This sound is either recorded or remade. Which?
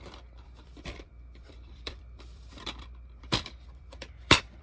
remade